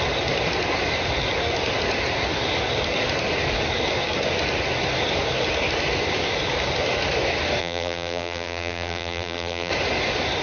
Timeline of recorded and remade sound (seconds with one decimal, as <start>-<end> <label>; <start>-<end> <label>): 0.0-7.6 recorded; 7.6-9.7 remade; 9.7-10.4 recorded